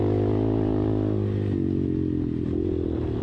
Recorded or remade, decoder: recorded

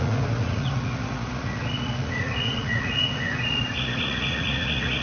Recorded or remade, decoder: remade, vocoder, Vocos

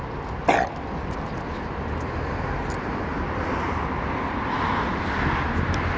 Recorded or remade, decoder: recorded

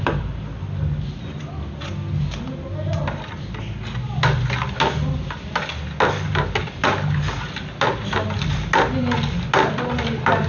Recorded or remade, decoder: recorded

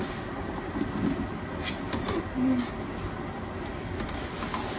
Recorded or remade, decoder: recorded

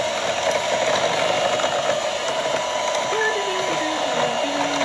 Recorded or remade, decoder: recorded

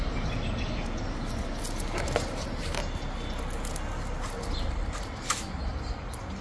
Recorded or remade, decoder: recorded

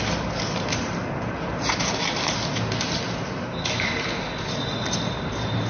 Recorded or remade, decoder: recorded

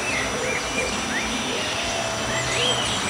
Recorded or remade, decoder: recorded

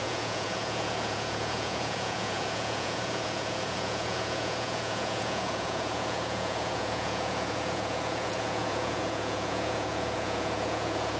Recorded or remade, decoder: remade, vocoder, Vocos